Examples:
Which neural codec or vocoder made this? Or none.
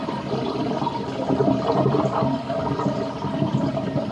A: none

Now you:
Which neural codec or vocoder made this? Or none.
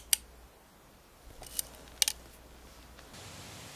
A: none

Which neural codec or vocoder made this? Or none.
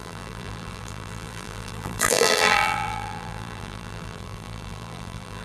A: vocoder, BigVGAN v2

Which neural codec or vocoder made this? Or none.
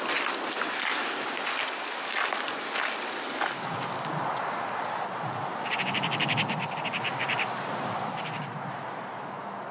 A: none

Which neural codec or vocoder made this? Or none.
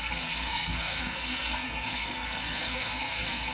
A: codec, SNAC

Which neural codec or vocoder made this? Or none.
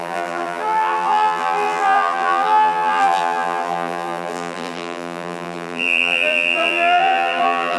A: vocoder, BigVGAN v2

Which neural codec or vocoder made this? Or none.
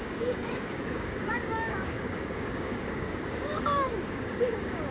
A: codec, DAC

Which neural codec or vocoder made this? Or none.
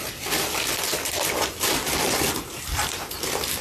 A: none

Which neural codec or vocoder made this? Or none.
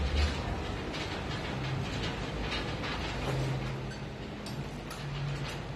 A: none